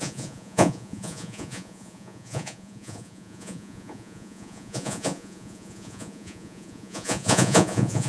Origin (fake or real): fake